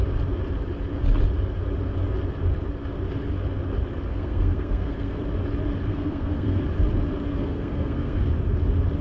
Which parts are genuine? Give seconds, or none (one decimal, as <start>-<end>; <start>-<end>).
0.0-4.1; 5.2-5.9; 6.6-7.3; 8.3-9.0